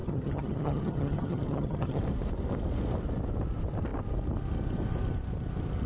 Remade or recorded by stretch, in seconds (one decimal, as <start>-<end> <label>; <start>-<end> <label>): 0.0-2.0 remade; 2.0-5.9 recorded